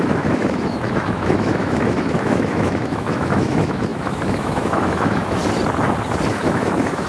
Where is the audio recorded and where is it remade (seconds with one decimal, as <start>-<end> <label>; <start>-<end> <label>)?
0.0-5.4 remade; 5.4-6.3 recorded; 6.3-7.1 remade